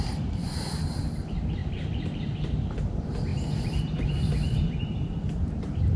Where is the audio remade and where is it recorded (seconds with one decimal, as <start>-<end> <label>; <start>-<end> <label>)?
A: 0.0-3.3 recorded; 3.3-4.3 remade; 4.3-6.0 recorded